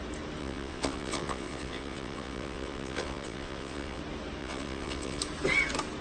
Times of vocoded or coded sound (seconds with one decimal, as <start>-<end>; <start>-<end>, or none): 0.4-4.0; 4.4-5.2